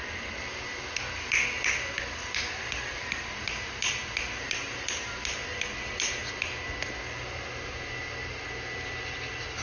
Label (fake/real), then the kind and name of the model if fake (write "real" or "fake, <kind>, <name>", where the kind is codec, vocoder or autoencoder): real